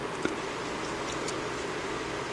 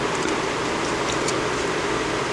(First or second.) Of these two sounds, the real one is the first